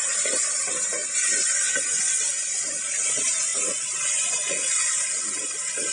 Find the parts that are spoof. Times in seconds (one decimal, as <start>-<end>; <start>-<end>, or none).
none